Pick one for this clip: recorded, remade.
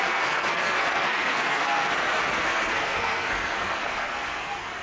remade